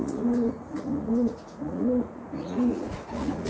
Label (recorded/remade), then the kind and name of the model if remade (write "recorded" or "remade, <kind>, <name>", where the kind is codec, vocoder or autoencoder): remade, vocoder, Vocos